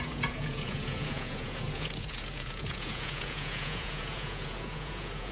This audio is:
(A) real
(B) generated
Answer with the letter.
B